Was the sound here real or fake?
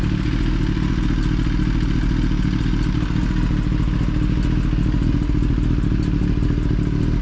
real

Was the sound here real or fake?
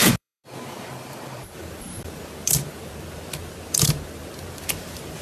fake